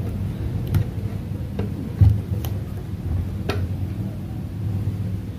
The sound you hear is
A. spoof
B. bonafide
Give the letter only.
B